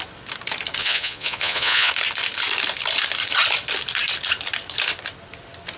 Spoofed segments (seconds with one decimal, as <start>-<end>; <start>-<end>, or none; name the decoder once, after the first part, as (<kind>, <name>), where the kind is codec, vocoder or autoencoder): 0.8-1.9 (vocoder, Vocos)